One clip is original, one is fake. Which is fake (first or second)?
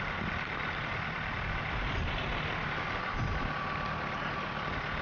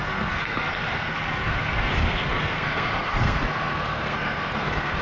second